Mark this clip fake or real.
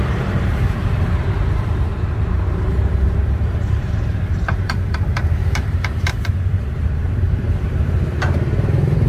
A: fake